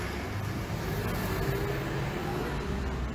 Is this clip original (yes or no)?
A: yes